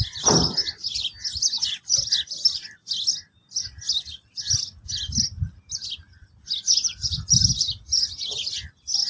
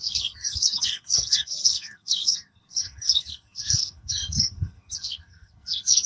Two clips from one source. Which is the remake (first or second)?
second